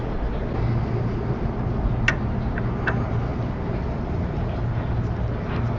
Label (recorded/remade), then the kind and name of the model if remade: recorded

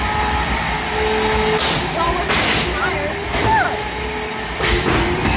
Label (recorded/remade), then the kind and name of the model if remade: recorded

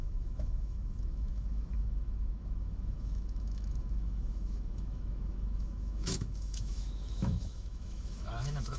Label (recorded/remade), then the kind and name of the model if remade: remade, autoencoder, DAC-VAE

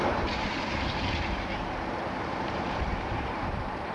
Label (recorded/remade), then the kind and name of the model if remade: remade, vocoder, BigVGAN v2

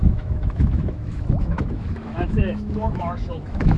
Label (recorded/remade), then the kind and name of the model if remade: remade, autoencoder, DAC-VAE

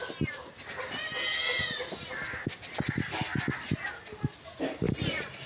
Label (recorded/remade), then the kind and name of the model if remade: recorded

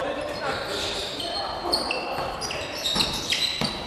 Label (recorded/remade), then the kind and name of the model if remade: recorded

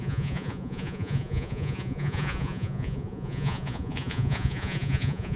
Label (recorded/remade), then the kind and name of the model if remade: remade, vocoder, Vocos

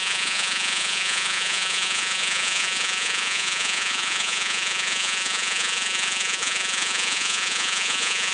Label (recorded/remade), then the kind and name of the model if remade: remade, vocoder, Vocos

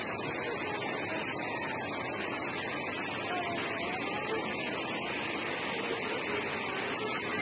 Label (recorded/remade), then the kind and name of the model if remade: recorded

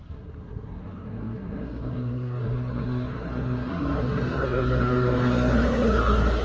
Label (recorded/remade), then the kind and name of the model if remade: remade, codec, SNAC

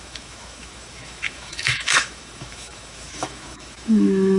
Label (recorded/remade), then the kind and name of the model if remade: remade, autoencoder, DAC-VAE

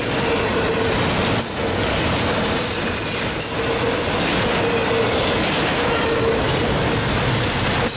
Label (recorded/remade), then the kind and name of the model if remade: recorded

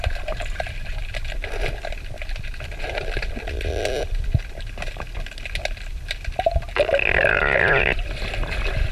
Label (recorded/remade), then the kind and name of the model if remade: recorded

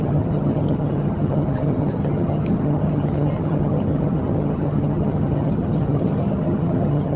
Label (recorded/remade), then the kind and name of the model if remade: remade, vocoder, HiFi-GAN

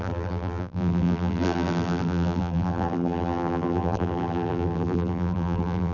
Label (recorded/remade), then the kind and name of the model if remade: remade, vocoder, BigVGAN v2